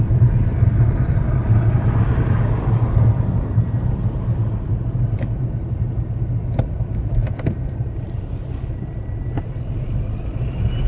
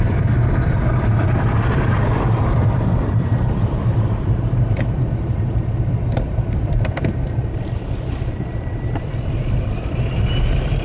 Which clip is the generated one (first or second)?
second